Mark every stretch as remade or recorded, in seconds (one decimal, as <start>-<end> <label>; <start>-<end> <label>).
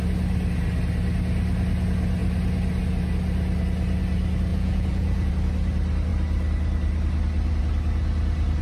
0.0-4.5 recorded; 4.5-5.3 remade; 5.3-8.6 recorded